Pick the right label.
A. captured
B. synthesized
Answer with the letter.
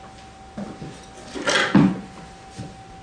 A